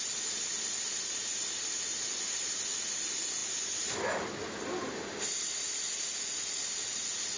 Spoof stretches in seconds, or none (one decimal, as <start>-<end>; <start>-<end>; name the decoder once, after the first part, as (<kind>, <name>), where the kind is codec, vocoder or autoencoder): none